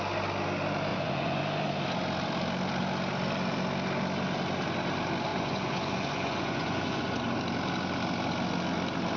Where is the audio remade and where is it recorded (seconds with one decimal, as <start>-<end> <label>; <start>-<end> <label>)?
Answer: 0.0-0.9 recorded; 0.9-1.4 remade; 1.4-5.3 recorded; 5.3-7.2 remade; 7.2-9.2 recorded